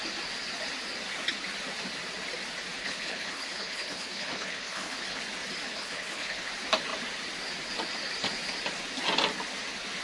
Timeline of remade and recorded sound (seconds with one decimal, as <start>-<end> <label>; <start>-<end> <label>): 0.0-2.8 recorded; 2.8-5.2 remade; 5.2-5.7 recorded; 5.7-6.5 remade; 6.5-10.0 recorded